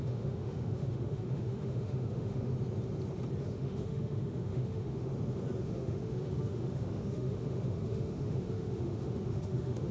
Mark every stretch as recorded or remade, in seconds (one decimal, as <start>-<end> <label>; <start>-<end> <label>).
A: 0.0-2.5 remade; 2.5-3.4 recorded; 3.4-5.1 remade; 5.1-5.6 recorded; 5.6-9.9 remade